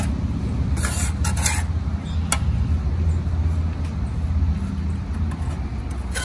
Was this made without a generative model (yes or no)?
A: yes